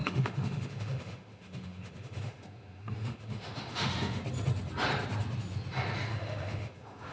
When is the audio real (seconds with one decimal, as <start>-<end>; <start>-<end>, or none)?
4.2-6.1